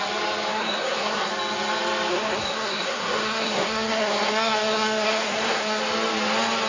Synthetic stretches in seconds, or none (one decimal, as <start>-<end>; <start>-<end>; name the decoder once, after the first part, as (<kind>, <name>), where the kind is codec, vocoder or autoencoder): 0.5-1.3 (codec, SNAC); 2.1-5.8